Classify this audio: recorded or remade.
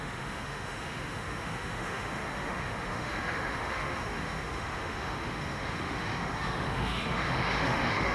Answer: remade